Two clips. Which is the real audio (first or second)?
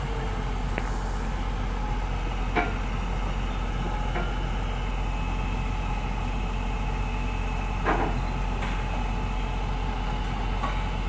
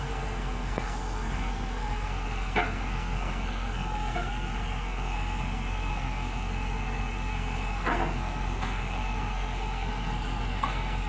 first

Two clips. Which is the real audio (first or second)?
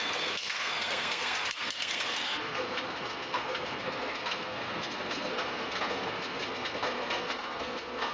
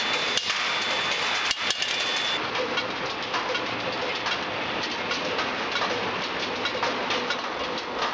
second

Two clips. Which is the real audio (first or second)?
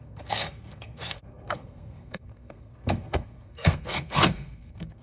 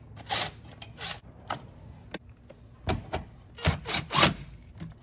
second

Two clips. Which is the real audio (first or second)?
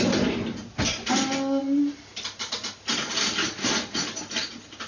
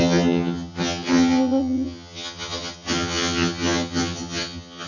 first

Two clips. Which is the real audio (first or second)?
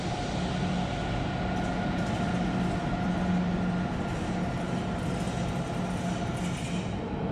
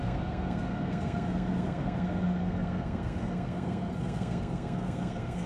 first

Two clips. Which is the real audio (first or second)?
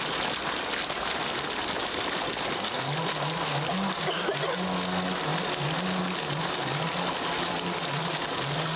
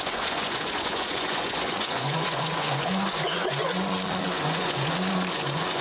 first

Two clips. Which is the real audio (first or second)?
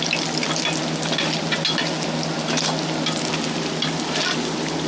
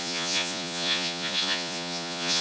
first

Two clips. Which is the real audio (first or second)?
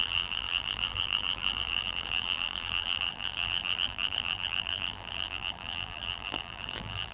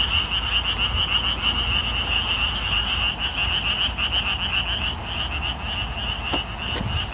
second